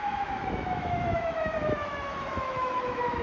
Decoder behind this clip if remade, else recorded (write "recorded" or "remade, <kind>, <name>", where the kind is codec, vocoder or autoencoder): remade, autoencoder, DAC-VAE